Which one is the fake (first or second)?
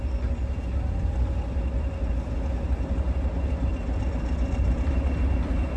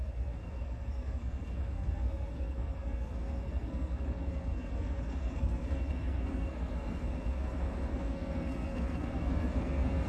second